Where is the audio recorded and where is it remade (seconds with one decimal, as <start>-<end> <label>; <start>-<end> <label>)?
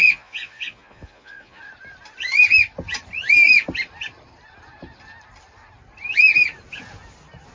0.0-1.6 remade; 1.6-7.5 recorded